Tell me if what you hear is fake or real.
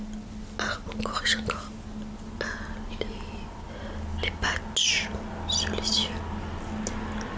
real